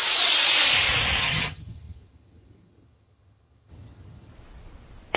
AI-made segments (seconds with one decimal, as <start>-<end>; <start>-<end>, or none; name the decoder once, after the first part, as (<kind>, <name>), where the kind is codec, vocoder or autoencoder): 1.2-4.3 (vocoder, HiFi-GAN)